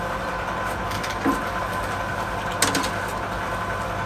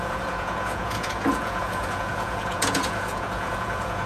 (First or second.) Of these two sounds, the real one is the first